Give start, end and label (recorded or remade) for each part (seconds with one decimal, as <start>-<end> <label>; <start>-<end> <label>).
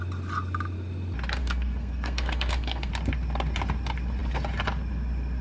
0.0-1.4 recorded; 1.4-2.9 remade; 2.9-5.4 recorded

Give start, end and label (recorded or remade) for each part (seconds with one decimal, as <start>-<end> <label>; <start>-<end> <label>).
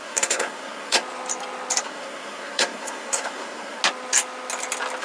0.0-1.0 remade; 1.0-1.8 recorded; 1.8-3.8 remade; 3.8-5.0 recorded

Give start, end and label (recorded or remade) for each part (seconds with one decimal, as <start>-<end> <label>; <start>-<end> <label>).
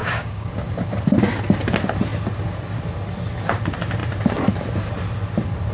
0.0-0.5 remade; 0.5-5.7 recorded